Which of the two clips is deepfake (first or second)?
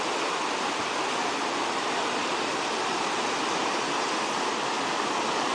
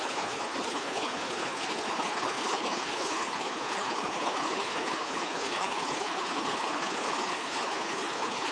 second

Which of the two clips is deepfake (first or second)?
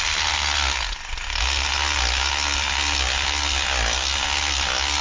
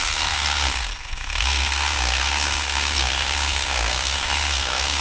second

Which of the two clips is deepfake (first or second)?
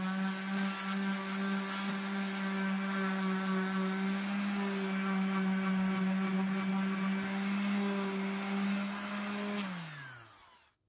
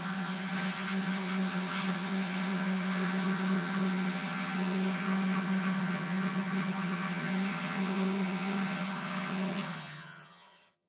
second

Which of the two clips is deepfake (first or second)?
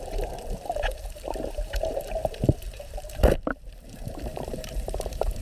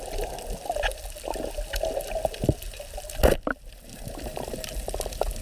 first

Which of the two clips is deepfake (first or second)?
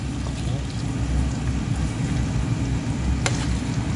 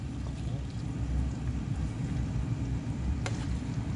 second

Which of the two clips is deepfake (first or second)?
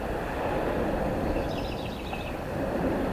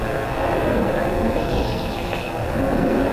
second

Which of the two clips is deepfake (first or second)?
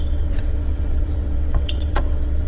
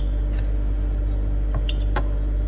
first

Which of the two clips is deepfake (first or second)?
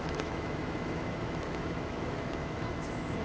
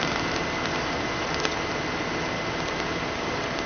first